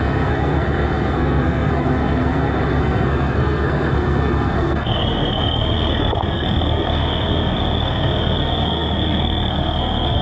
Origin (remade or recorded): remade